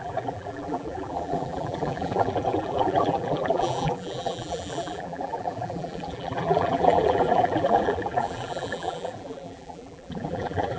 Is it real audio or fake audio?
fake